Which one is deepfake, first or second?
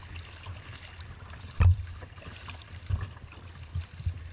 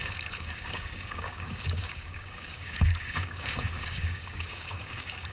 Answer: second